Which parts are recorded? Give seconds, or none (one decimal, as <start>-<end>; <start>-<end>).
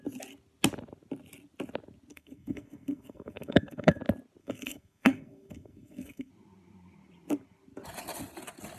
0.0-2.1; 4.0-4.4; 6.3-8.8